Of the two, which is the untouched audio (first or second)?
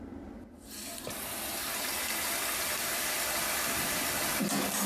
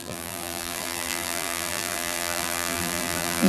first